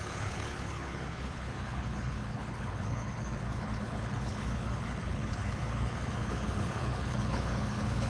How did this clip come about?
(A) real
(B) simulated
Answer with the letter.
B